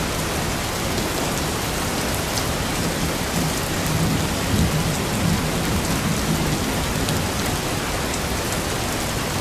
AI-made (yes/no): no